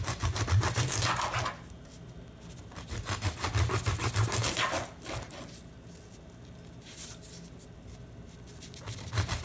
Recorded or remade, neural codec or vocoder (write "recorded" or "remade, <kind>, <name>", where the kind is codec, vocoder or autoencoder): recorded